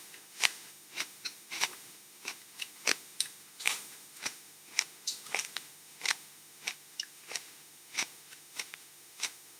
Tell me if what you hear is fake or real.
fake